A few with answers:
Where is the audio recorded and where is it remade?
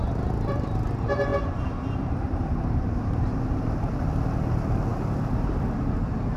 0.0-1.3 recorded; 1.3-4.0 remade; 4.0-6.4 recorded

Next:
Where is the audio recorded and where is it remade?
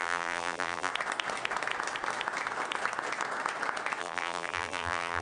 0.0-0.9 remade; 0.9-4.0 recorded; 4.0-5.2 remade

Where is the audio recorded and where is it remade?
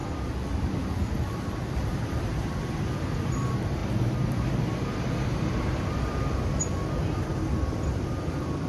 0.0-1.2 recorded; 1.2-8.7 remade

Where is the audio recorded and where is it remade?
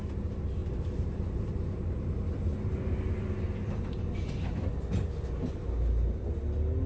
0.0-0.6 recorded; 0.6-4.7 remade; 4.7-6.9 recorded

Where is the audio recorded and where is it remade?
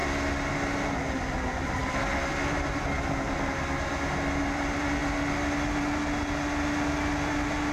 0.0-7.7 recorded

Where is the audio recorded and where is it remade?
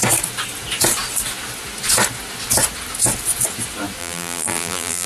0.0-4.0 recorded; 4.0-5.1 remade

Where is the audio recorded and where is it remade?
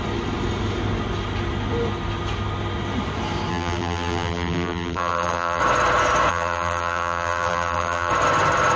0.0-3.5 recorded; 3.5-5.6 remade; 5.6-6.3 recorded; 6.3-8.1 remade; 8.1-8.8 recorded